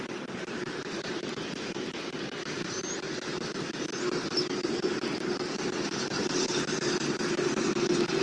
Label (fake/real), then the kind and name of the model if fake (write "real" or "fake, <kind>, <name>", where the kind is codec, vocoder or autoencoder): real